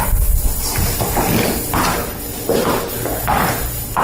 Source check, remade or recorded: recorded